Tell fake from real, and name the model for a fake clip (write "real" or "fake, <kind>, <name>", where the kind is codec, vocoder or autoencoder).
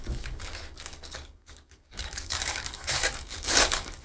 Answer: fake, codec, DAC